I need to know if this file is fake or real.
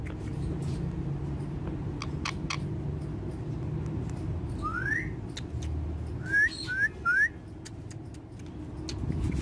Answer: real